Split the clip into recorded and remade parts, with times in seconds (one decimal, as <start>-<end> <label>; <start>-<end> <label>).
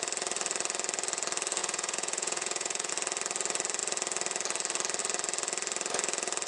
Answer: 0.0-1.6 recorded; 1.6-2.9 remade; 2.9-6.5 recorded